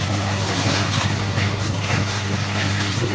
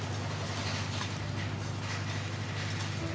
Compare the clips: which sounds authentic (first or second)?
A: second